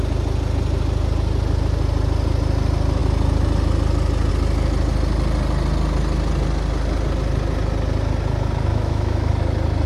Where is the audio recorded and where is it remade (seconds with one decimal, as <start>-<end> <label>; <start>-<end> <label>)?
0.0-8.7 recorded; 8.7-9.3 remade; 9.3-9.9 recorded